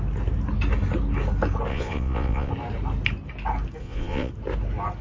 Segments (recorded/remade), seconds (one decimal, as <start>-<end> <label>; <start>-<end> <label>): 0.0-1.7 recorded; 1.7-2.5 remade; 2.5-3.8 recorded; 3.8-4.3 remade; 4.3-5.0 recorded